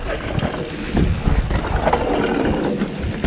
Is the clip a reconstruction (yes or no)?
no